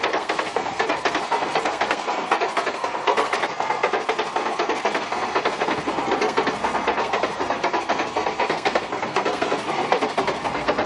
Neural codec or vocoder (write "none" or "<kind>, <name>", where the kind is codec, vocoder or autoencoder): codec, SNAC